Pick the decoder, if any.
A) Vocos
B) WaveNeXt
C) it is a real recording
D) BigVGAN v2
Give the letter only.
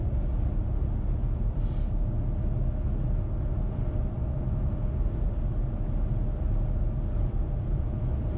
C